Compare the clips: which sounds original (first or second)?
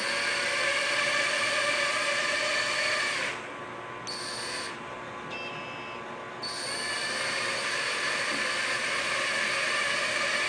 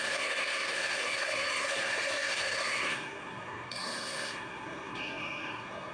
first